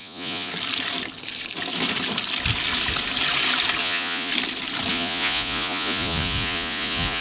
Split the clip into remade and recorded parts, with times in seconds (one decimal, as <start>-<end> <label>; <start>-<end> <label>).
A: 0.0-0.5 remade; 0.5-3.8 recorded; 3.8-4.3 remade; 4.3-4.9 recorded; 4.9-7.2 remade